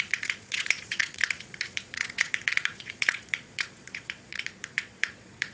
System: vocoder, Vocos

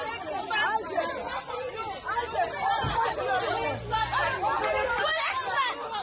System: none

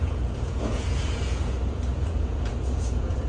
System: vocoder, Vocos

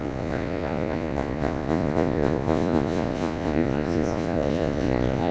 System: vocoder, Vocos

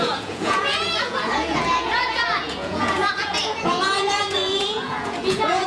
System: vocoder, Vocos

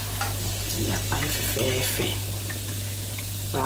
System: none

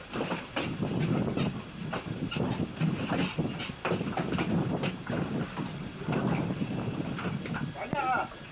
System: none